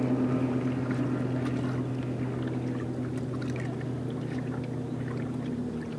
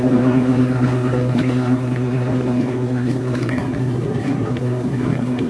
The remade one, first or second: second